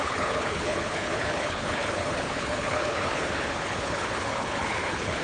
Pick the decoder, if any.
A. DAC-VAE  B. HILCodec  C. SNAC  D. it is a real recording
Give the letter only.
B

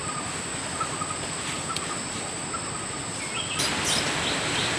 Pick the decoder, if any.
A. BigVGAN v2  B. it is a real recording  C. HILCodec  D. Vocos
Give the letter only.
B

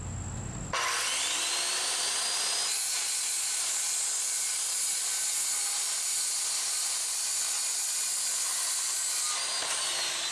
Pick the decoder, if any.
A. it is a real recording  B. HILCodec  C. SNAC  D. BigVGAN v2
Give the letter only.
A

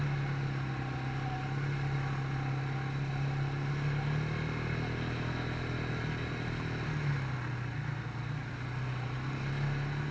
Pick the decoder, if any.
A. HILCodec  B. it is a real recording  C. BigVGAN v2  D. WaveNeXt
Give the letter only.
B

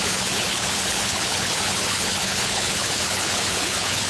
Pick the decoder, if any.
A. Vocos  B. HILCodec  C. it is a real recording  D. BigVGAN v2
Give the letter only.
B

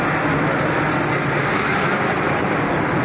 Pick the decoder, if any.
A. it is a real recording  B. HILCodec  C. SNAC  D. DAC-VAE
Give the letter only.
A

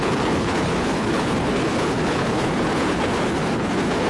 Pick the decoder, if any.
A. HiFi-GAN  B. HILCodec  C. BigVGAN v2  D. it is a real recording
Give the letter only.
B